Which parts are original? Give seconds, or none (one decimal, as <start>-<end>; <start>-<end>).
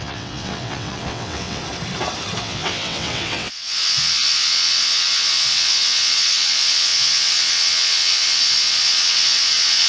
1.6-2.4